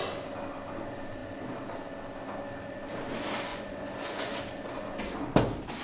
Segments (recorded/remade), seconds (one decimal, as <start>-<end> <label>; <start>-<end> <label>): 0.0-3.5 recorded; 3.5-4.4 remade; 4.4-5.8 recorded